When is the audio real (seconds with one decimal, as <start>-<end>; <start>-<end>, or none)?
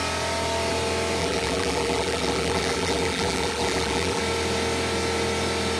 0.0-1.2; 4.2-5.8